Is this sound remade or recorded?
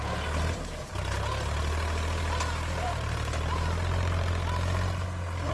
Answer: recorded